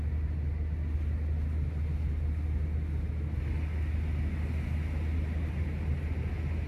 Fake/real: real